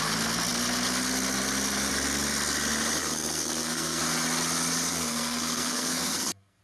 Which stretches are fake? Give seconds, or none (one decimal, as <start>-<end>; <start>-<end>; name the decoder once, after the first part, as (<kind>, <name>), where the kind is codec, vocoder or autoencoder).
3.0-4.0 (codec, SNAC); 4.9-6.6